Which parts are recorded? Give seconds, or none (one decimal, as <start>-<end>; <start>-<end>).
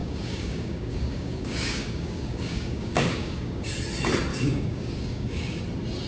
3.7-4.3; 5.6-6.1